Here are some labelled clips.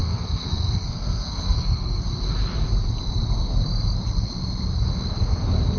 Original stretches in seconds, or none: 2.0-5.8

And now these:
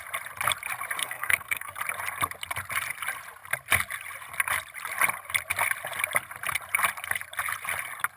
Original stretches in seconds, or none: 0.0-1.0; 1.8-8.2

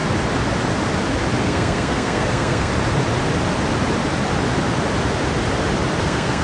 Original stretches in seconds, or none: 0.0-1.4; 2.7-6.0

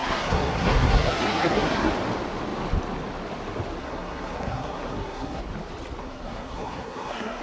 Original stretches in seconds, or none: 1.9-3.8; 5.4-6.0